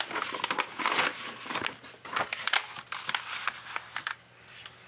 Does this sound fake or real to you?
real